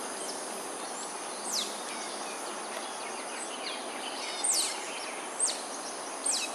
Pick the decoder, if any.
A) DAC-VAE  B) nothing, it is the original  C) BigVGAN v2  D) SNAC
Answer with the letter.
B